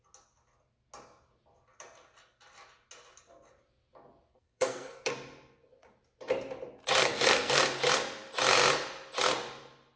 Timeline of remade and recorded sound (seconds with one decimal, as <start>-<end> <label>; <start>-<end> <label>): 0.0-4.3 recorded; 4.3-5.1 remade; 5.1-7.0 recorded; 7.0-7.6 remade; 7.6-10.0 recorded